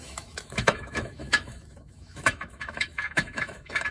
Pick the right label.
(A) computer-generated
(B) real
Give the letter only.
A